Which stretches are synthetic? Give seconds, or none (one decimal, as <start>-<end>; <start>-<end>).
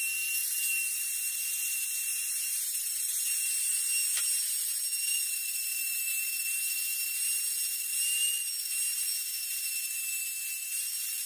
0.0-8.2; 9.2-11.3